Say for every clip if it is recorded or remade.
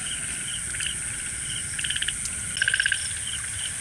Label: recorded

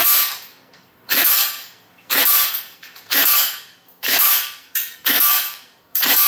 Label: remade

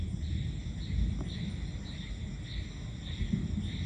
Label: recorded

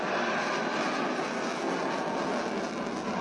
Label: recorded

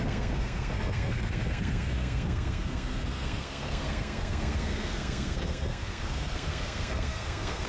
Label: remade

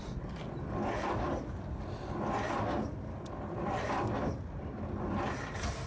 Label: recorded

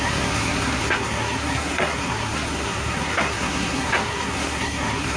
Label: remade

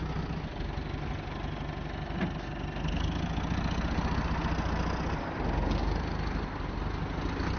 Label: recorded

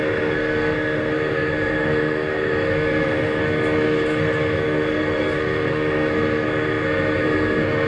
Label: remade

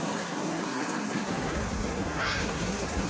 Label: remade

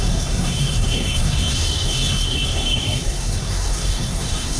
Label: remade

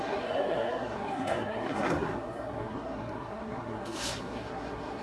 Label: remade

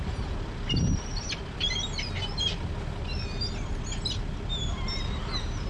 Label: recorded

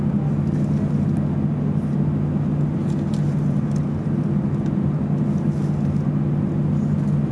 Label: recorded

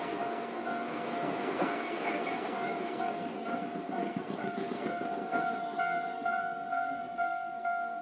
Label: remade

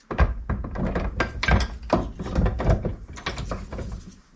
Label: recorded